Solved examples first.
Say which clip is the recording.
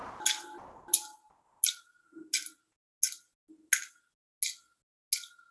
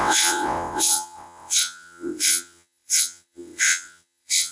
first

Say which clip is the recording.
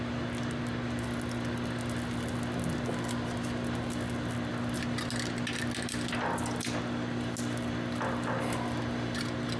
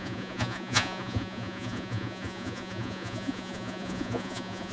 first